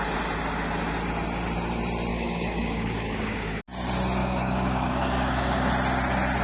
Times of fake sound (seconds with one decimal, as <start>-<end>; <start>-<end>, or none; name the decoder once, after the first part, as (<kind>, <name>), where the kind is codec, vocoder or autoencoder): 2.1-3.6 (codec, DAC); 4.2-5.7

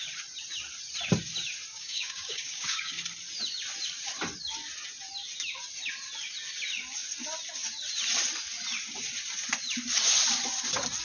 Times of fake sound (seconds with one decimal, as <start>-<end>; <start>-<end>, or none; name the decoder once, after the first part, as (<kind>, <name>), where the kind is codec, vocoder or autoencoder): 1.7-2.9 (codec, DAC)

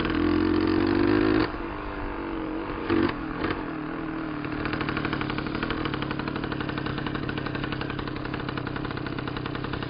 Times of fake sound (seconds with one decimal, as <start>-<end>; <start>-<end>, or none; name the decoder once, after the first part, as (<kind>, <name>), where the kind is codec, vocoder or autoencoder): 1.4-2.0 (codec, DAC); 2.8-3.4; 6.9-8.4

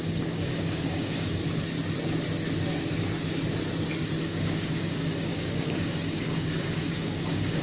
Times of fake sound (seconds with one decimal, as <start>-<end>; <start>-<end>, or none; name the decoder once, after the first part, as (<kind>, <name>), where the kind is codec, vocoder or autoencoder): 0.0-1.4 (codec, DAC); 4.2-7.6

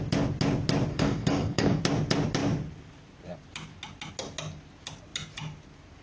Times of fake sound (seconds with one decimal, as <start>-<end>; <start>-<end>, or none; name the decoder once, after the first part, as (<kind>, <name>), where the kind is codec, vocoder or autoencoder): 0.9-1.8 (codec, DAC)

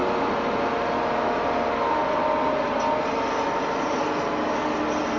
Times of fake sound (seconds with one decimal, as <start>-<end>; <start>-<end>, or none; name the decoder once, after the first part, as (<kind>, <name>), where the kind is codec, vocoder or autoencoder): none